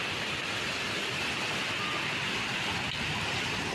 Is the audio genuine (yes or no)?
yes